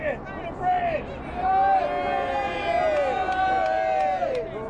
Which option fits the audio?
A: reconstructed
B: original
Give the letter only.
B